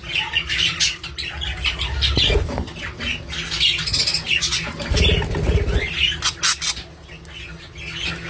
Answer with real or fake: real